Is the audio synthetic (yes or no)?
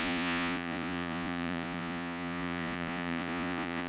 yes